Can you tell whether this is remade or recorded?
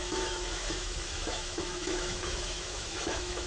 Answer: remade